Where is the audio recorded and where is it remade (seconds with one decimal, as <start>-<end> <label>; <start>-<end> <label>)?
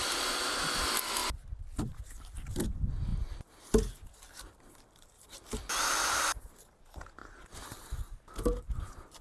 0.0-1.2 remade; 1.2-2.0 recorded; 2.0-3.1 remade; 3.1-3.9 recorded; 3.9-7.2 remade; 7.2-8.6 recorded; 8.6-9.2 remade